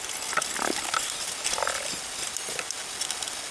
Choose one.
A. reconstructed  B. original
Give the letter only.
B